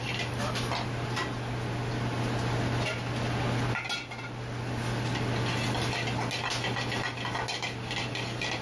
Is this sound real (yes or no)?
yes